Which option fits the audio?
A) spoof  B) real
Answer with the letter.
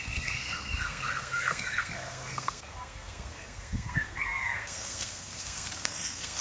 A